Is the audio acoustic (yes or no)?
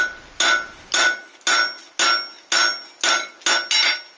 yes